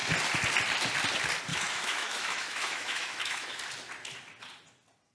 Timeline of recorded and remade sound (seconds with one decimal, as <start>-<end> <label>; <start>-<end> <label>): 0.0-1.5 recorded; 1.5-3.6 remade; 3.6-5.1 recorded